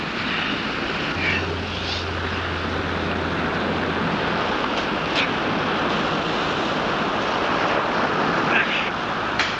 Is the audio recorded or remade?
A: recorded